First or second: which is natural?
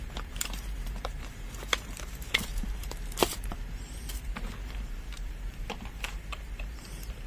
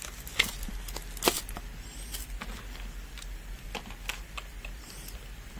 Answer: second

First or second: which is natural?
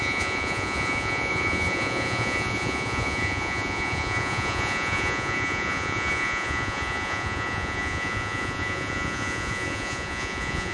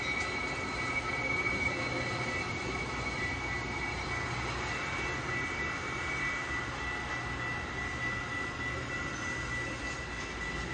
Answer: second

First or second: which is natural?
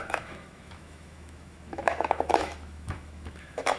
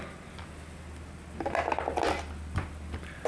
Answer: second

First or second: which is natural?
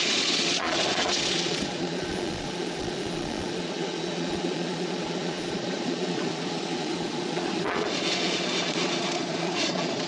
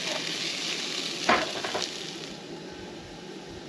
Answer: second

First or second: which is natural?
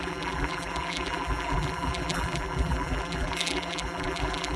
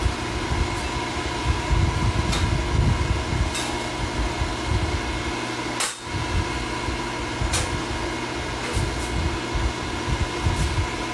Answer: second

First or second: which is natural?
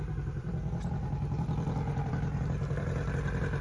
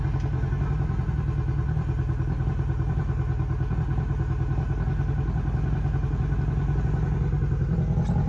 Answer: second